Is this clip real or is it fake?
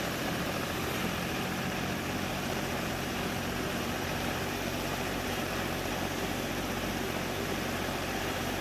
fake